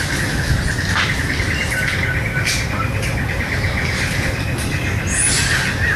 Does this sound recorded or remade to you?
recorded